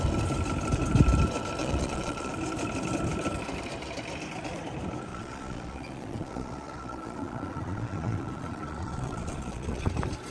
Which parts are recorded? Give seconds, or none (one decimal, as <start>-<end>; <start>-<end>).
0.0-1.6; 2.3-5.1; 9.9-10.3

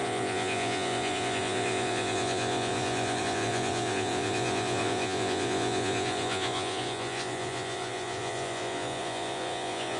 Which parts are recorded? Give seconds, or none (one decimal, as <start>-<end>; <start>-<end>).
none